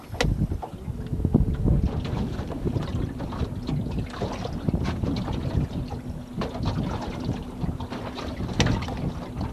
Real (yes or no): yes